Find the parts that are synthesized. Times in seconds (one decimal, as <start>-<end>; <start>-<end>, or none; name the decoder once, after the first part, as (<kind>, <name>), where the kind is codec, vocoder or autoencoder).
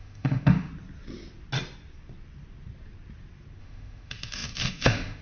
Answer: 0.0-0.7 (autoencoder, DAC-VAE); 3.6-5.2